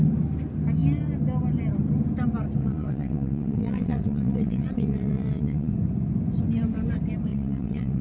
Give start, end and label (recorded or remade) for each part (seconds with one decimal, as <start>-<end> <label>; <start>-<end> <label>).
0.0-2.6 recorded; 2.6-5.7 remade; 5.7-7.3 recorded; 7.3-8.0 remade